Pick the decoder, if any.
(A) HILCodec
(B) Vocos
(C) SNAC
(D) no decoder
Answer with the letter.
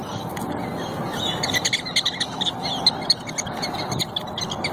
D